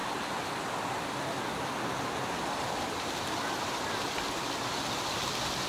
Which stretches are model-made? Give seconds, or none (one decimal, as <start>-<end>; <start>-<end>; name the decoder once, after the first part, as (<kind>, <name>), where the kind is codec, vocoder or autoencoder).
none